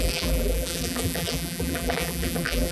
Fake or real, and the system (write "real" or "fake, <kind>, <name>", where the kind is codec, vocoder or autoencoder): fake, vocoder, BigVGAN v2